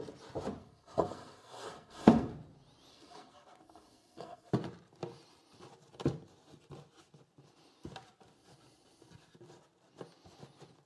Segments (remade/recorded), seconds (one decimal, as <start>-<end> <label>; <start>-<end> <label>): 0.0-0.6 recorded; 0.6-2.3 remade; 2.3-2.9 recorded; 2.9-4.5 remade; 4.5-10.9 recorded